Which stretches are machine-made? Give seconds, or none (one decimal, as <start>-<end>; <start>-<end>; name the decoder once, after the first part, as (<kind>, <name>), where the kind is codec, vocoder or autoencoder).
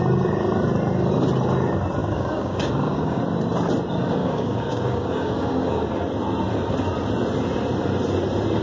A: 2.0-3.2 (codec, DAC); 4.2-5.9